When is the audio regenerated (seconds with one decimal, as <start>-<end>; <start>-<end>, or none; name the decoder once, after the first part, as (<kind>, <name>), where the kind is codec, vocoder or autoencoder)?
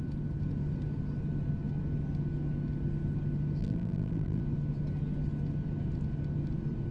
3.6-4.4 (vocoder, BigVGAN v2)